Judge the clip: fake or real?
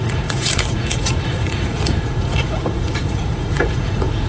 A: fake